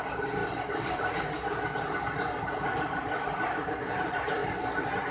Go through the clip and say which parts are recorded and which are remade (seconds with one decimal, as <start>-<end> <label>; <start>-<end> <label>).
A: 0.0-0.4 remade; 0.4-2.0 recorded; 2.0-4.4 remade; 4.4-5.1 recorded